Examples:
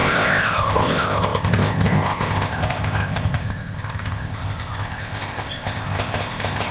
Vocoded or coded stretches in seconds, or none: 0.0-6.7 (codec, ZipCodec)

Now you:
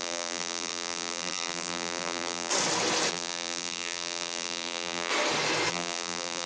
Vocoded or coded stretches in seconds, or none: 0.0-2.5 (vocoder, BigVGAN v2); 3.1-5.1; 5.7-6.5

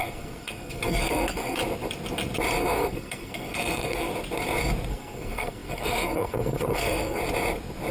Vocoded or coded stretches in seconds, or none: 0.0-1.6 (codec, SNAC); 2.6-4.1; 4.9-7.2

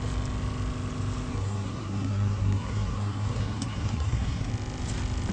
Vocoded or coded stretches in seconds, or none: 1.3-4.5 (codec, SNAC)